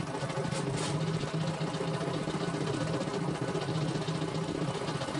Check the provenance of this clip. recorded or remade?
recorded